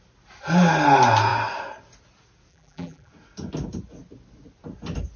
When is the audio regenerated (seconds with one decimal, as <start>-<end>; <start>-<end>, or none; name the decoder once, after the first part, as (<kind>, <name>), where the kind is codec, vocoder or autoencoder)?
2.5-3.1 (vocoder, BigVGAN v2)